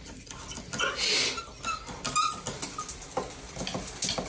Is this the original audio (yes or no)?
yes